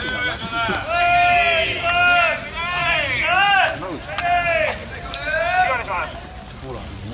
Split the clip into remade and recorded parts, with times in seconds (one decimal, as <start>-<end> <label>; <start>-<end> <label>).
0.0-4.8 recorded; 4.8-6.0 remade; 6.0-7.1 recorded